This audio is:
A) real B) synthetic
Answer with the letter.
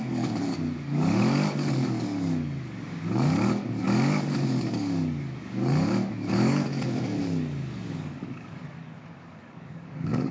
B